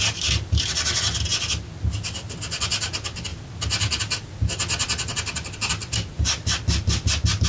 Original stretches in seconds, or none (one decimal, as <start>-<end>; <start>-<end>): 0.0-7.5